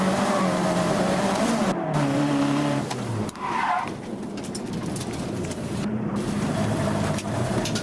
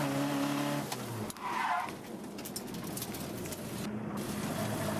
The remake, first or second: first